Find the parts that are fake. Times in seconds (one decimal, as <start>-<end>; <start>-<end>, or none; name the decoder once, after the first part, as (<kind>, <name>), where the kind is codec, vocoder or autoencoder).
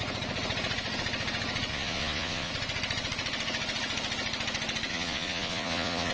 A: 1.7-2.5 (vocoder, Vocos); 4.9-6.1